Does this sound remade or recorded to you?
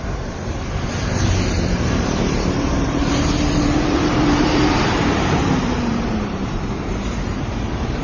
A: remade